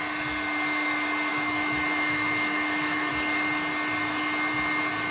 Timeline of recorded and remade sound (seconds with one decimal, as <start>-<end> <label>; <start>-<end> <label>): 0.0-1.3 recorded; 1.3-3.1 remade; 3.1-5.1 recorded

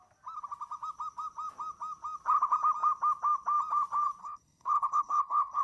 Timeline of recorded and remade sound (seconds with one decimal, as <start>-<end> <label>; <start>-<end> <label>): 0.0-4.2 recorded; 4.2-5.6 remade

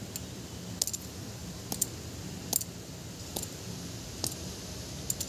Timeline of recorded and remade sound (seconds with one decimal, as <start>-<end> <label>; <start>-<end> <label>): 0.0-5.3 recorded

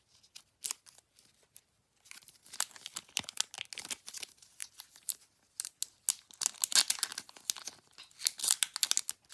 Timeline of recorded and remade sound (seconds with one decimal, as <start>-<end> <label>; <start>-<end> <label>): 0.0-4.6 recorded; 4.6-5.1 remade; 5.1-9.3 recorded

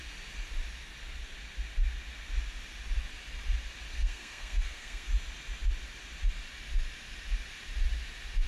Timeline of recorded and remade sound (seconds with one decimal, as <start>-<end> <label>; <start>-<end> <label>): 0.0-3.9 recorded; 3.9-5.1 remade; 5.1-8.5 recorded

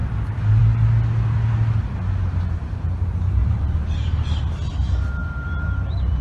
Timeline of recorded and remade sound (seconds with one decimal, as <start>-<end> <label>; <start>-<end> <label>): 0.0-0.6 remade; 0.6-3.4 recorded; 3.4-4.4 remade; 4.4-5.2 recorded; 5.2-6.2 remade